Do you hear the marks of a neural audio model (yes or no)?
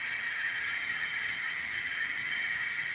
yes